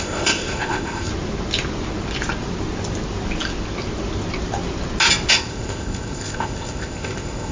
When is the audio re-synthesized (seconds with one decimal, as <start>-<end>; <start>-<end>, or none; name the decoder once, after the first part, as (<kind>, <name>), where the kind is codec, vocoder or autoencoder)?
0.0-1.1 (codec, ZipCodec); 5.3-7.5